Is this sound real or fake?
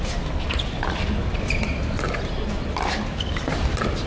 real